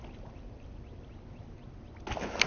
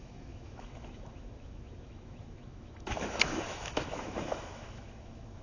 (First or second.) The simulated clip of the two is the second